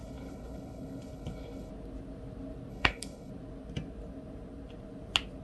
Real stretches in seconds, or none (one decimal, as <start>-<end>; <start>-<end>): 1.7-2.7; 3.3-5.4